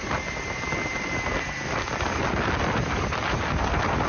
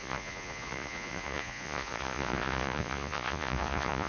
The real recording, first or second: first